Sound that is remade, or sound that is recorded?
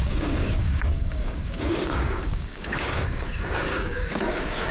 remade